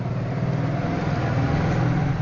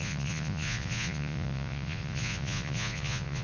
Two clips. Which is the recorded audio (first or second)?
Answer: first